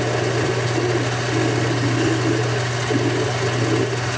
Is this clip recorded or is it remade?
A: recorded